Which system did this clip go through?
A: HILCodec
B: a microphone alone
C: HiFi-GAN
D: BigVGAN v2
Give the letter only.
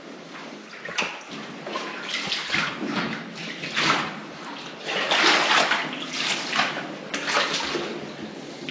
B